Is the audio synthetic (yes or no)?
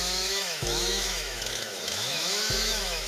yes